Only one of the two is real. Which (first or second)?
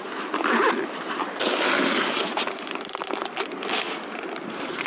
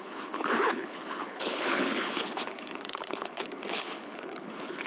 first